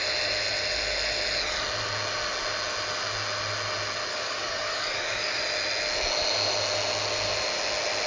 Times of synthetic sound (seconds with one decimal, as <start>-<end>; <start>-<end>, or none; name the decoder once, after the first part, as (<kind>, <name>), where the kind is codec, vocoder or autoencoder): 4.1-5.4 (codec, DAC)